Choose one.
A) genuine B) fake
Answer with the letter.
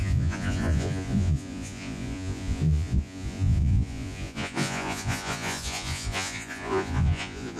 B